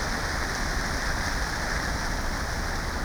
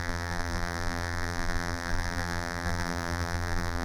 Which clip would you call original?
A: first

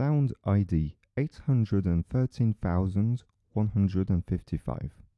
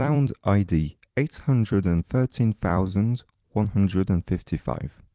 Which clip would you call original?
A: first